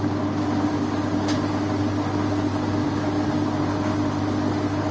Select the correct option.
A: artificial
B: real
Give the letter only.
B